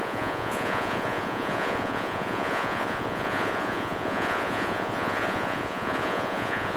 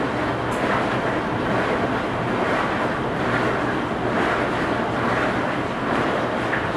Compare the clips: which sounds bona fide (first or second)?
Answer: second